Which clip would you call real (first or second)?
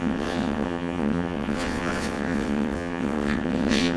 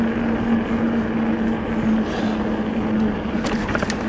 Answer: second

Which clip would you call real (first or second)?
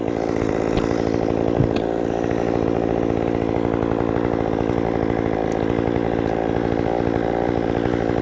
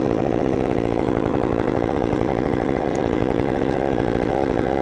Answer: first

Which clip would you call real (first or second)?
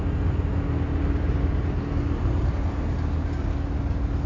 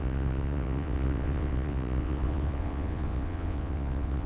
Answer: first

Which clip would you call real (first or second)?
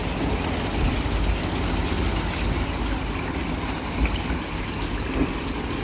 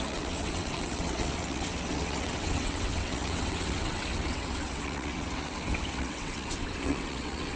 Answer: first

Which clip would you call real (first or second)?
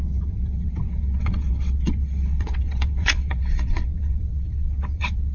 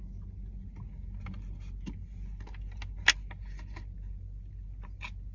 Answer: second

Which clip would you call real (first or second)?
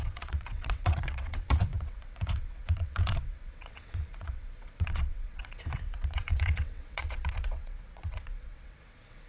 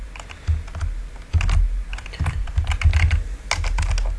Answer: second